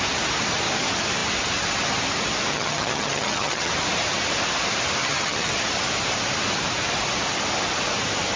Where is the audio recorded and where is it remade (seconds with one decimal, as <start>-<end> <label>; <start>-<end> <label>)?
0.0-2.5 recorded; 2.5-3.7 remade; 3.7-5.0 recorded; 5.0-5.5 remade; 5.5-8.4 recorded